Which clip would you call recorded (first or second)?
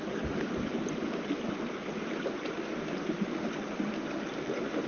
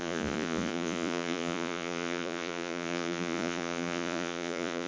first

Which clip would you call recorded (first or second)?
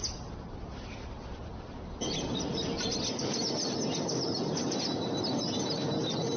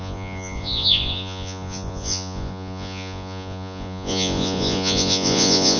first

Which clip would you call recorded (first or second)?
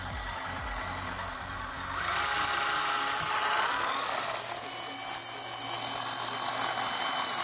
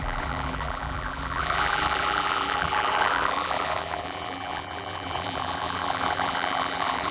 first